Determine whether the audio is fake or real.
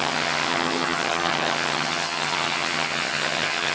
fake